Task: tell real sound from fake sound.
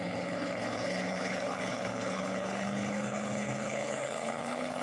fake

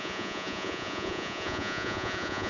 fake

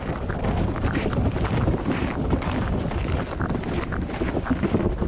fake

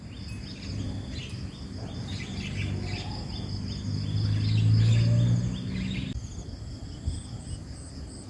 real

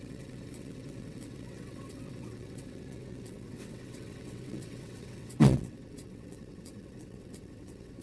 fake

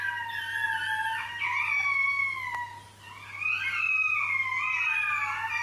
real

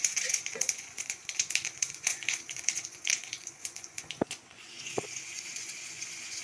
fake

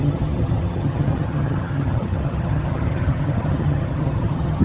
fake